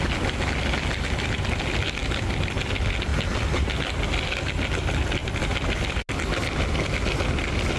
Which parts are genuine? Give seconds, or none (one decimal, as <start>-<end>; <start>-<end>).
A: 0.0-7.8